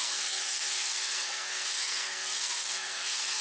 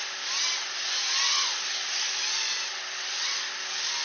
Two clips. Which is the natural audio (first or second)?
second